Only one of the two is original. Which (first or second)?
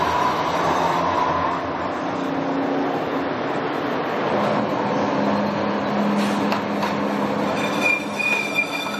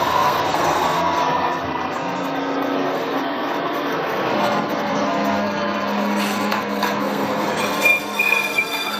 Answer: first